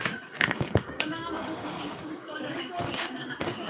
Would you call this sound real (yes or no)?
no